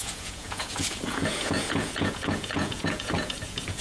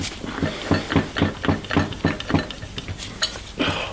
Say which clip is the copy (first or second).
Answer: first